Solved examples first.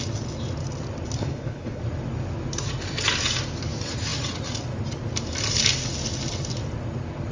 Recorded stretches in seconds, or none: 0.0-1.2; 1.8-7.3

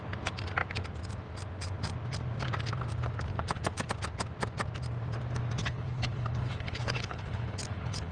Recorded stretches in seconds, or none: 0.0-3.3; 3.9-5.6

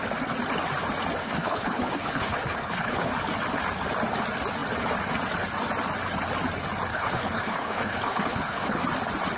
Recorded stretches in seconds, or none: 0.0-1.2; 3.1-6.9; 8.8-9.4

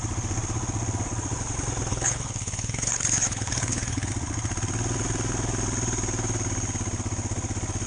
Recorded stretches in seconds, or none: 0.0-1.9; 4.1-7.9

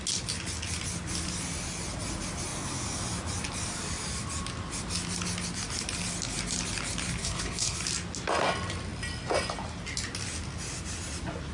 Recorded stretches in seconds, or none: 0.0-7.2; 7.8-11.5